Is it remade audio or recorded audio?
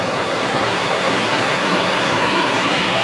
remade